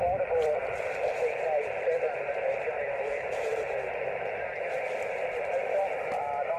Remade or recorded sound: remade